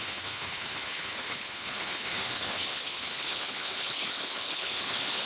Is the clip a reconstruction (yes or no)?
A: yes